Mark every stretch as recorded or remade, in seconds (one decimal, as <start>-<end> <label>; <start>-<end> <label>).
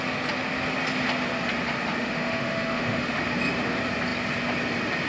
0.0-2.0 recorded; 2.0-3.2 remade; 3.2-5.1 recorded